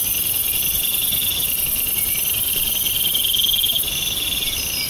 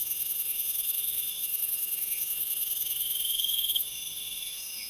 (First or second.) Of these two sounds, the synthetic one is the second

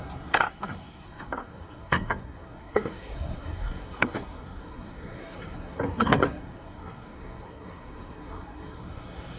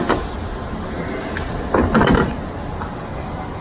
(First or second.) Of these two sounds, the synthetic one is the first